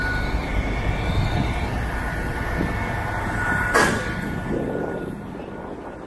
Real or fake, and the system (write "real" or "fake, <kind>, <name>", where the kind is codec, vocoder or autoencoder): real